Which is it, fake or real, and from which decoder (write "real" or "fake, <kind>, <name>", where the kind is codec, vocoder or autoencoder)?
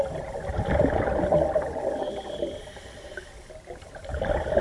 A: real